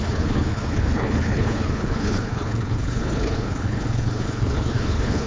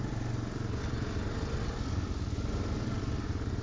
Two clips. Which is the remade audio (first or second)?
first